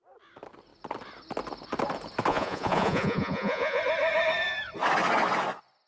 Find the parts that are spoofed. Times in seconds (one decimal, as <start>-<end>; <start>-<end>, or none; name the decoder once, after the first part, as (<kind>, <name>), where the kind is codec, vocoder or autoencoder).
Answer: 2.3-3.8 (vocoder, Vocos)